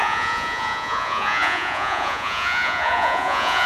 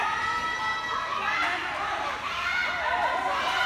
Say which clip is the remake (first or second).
first